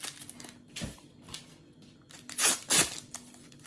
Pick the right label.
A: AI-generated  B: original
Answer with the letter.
B